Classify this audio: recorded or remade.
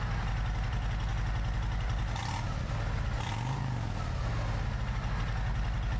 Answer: recorded